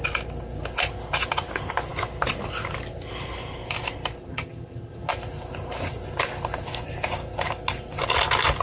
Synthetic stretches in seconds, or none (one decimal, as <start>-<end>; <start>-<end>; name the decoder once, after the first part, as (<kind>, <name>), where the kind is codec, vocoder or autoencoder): 4.2-5.1 (vocoder, HiFi-GAN)